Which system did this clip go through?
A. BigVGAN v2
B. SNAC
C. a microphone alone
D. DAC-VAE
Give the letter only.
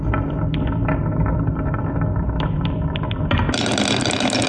C